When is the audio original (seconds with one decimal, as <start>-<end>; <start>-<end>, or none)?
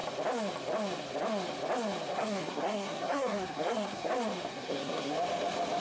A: 0.0-2.1; 4.1-4.5; 5.1-5.8